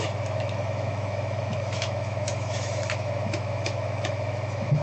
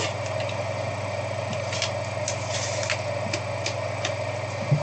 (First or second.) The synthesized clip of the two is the first